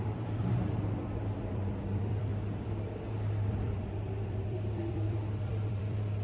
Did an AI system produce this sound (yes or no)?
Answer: yes